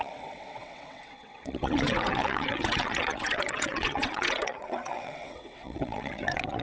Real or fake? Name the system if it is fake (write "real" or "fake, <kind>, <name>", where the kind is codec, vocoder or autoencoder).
fake, vocoder, WaveNeXt